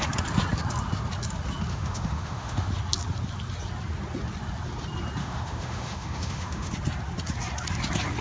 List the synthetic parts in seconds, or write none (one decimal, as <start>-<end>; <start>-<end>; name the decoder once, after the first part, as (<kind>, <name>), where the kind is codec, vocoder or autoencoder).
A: 1.7-2.7 (autoencoder, DAC-VAE); 5.2-6.7